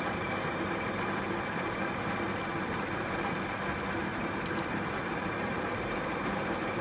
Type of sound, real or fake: fake